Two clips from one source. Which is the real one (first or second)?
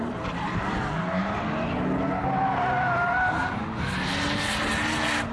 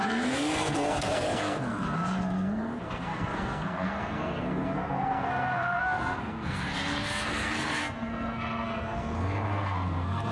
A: first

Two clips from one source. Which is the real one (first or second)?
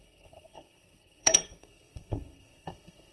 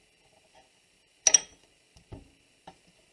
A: second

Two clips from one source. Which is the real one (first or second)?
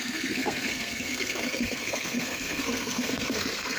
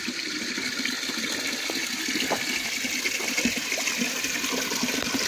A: second